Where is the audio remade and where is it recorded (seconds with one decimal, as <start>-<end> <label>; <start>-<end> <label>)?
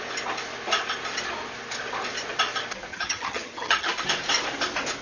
0.0-2.9 recorded; 2.9-3.9 remade; 3.9-5.0 recorded